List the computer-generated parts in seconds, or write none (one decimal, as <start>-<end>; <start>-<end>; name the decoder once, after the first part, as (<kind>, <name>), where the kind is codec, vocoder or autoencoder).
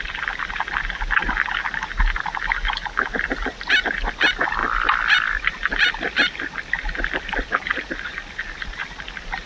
4.6-9.5 (vocoder, BigVGAN v2)